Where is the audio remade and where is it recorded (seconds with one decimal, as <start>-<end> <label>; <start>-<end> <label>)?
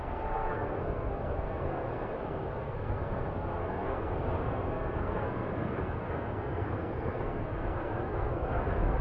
0.0-9.0 remade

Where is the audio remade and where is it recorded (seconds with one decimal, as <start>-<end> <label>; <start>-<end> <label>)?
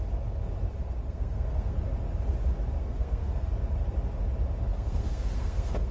0.0-1.0 recorded; 1.0-1.8 remade; 1.8-2.8 recorded; 2.8-3.5 remade; 3.5-4.7 recorded; 4.7-5.9 remade